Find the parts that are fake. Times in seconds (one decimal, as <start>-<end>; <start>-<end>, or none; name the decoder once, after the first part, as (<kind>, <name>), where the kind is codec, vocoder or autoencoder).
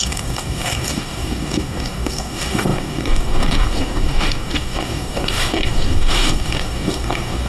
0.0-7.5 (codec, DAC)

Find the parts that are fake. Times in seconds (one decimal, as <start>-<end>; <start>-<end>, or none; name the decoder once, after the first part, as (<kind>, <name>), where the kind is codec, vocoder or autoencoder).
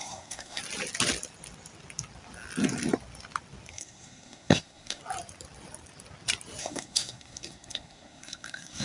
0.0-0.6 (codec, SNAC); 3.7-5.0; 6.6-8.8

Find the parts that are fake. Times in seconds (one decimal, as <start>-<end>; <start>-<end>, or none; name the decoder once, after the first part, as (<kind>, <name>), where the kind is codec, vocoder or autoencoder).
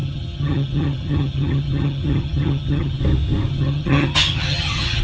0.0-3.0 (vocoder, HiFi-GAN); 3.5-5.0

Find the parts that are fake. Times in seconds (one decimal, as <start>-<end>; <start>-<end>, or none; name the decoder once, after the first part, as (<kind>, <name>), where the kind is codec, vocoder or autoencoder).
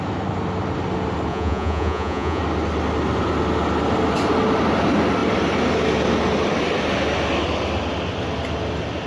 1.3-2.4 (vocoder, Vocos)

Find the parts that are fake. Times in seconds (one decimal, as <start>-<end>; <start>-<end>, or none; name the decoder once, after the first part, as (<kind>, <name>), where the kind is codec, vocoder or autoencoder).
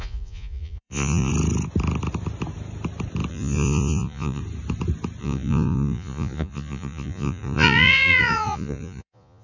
0.0-1.3 (vocoder, Vocos); 3.3-4.4; 5.2-9.4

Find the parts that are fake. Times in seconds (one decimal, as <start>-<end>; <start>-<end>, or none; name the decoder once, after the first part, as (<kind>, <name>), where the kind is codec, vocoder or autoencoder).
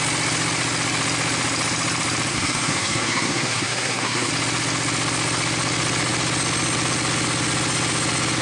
2.3-4.3 (codec, SNAC)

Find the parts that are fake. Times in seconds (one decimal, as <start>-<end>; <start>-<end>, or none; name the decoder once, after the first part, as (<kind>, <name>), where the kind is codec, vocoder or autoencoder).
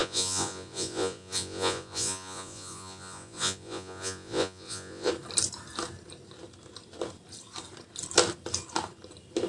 0.0-5.1 (vocoder, Vocos)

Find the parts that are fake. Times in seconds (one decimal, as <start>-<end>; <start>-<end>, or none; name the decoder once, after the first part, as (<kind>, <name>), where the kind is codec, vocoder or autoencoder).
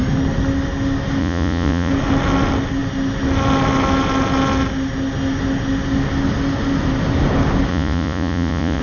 1.2-1.9 (vocoder, Vocos); 7.7-8.8